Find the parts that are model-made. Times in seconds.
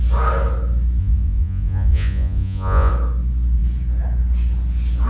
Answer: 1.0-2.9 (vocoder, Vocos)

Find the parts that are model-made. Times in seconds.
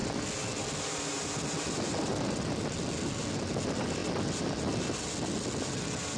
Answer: none